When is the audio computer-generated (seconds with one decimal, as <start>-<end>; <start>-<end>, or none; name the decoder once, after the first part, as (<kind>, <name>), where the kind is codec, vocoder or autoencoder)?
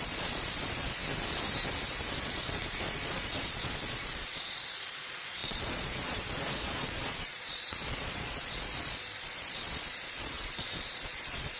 0.0-1.0 (vocoder, Vocos); 2.2-11.6